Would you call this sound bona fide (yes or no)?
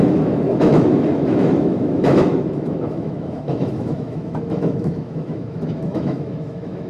no